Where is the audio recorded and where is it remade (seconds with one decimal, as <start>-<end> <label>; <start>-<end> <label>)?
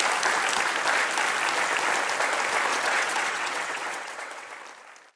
0.0-2.7 recorded; 2.7-4.5 remade; 4.5-5.2 recorded